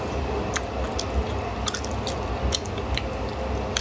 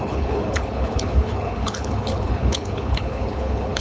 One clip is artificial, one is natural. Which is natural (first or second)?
first